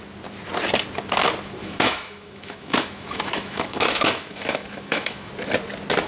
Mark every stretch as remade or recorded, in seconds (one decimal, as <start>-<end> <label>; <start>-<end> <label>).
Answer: 0.0-1.6 recorded; 1.6-5.3 remade; 5.3-6.1 recorded